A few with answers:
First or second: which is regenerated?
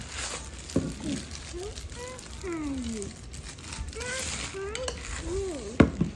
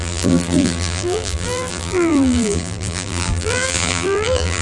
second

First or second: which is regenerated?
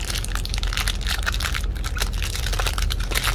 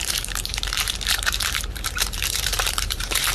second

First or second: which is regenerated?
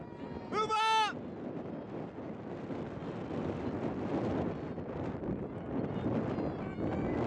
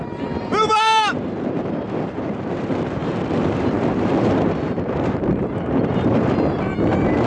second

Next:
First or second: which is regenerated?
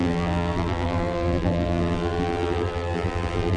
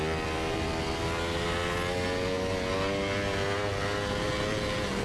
first